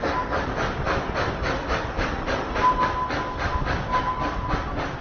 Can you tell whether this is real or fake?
real